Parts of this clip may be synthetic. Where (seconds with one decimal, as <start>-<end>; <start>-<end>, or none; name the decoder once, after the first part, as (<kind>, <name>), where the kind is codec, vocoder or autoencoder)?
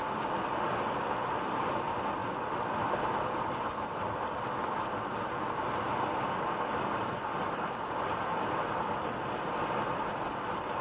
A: none